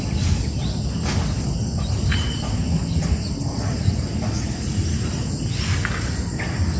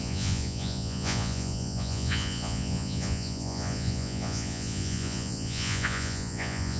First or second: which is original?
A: first